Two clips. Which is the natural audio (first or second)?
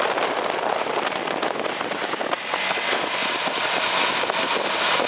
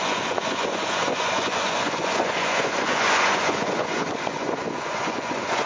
first